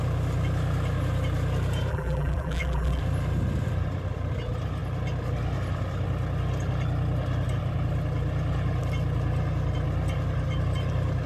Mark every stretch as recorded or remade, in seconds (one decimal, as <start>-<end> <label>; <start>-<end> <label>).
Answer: 0.0-1.9 recorded; 1.9-3.0 remade; 3.0-11.3 recorded